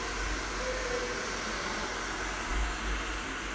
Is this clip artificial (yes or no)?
no